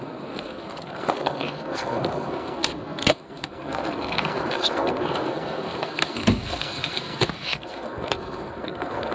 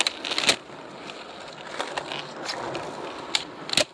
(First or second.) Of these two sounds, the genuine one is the second